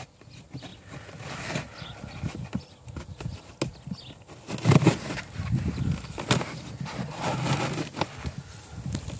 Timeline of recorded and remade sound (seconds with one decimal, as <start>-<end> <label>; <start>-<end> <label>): 0.0-9.2 recorded